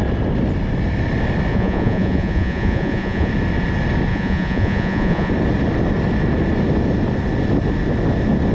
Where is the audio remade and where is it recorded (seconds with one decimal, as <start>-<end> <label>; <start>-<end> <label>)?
0.0-1.5 recorded; 1.5-3.3 remade; 3.3-4.1 recorded; 4.1-5.3 remade; 5.3-8.5 recorded